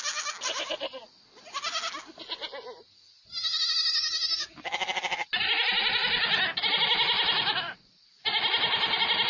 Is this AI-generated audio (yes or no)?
no